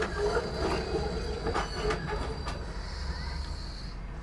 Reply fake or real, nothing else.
real